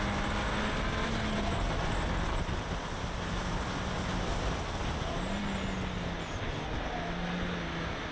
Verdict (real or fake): real